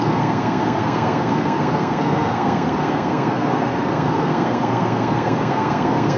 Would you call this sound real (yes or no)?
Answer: no